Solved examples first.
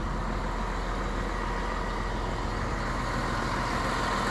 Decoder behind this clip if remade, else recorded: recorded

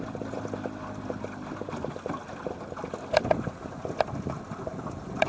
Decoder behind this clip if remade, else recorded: recorded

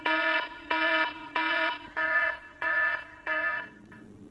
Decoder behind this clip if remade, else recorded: remade, vocoder, Vocos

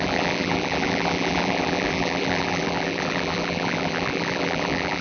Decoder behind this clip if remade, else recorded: remade, vocoder, BigVGAN v2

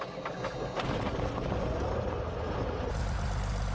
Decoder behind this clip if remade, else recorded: recorded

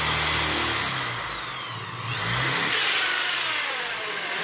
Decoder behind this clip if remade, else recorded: recorded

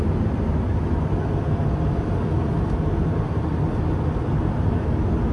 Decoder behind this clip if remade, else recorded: recorded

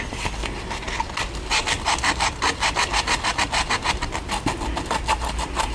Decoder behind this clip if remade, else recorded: recorded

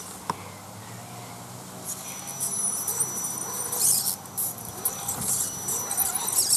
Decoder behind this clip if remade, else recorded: recorded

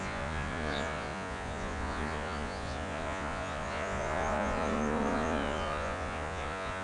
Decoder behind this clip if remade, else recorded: remade, vocoder, Vocos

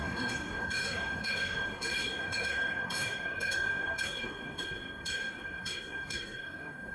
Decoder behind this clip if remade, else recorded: remade, codec, SNAC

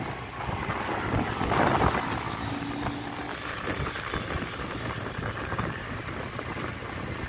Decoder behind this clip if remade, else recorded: recorded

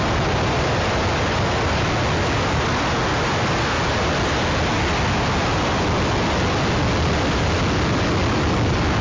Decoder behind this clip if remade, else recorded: recorded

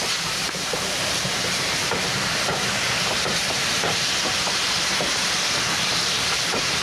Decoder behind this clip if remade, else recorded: remade, vocoder, BigVGAN v2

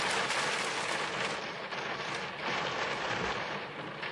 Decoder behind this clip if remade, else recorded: remade, vocoder, BigVGAN v2